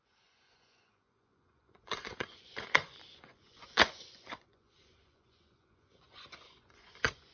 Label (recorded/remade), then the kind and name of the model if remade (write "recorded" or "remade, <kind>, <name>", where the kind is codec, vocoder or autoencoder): remade, vocoder, Vocos